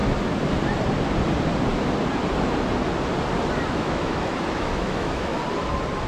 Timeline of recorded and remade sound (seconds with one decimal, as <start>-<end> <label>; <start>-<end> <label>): 0.0-3.7 recorded; 3.7-5.3 remade; 5.3-6.1 recorded